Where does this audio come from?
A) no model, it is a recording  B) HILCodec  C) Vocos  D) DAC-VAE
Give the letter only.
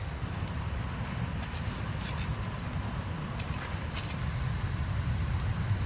A